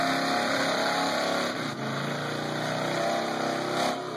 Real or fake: real